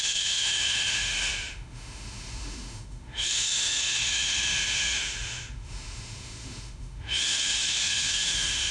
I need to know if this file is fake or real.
fake